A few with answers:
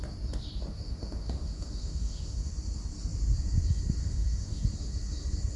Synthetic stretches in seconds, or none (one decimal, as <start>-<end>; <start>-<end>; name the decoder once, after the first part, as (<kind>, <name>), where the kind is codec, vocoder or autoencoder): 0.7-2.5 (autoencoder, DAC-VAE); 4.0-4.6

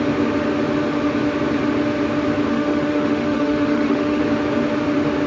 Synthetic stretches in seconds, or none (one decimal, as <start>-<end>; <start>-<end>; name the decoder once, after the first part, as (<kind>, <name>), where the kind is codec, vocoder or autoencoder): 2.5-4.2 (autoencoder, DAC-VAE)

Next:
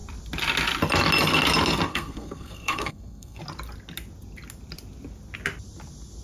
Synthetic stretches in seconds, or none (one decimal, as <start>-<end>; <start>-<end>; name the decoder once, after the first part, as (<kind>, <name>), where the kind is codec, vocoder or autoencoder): 1.9-3.4 (codec, SNAC)